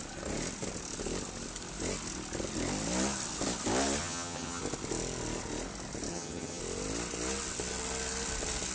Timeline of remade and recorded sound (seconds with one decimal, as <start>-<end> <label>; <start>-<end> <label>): 0.0-4.0 recorded; 4.0-4.6 remade; 4.6-6.1 recorded; 6.1-6.6 remade; 6.6-8.7 recorded